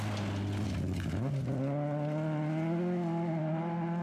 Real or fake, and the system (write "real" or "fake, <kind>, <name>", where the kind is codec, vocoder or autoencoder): real